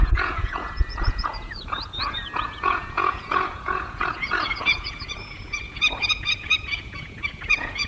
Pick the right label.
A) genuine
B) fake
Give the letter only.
B